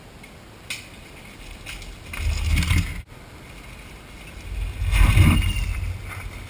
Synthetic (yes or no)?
no